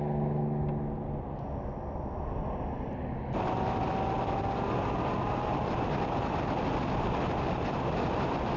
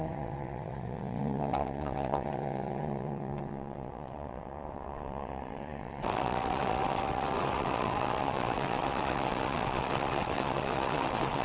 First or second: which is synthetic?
second